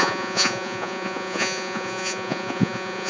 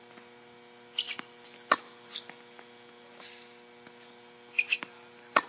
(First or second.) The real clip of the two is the second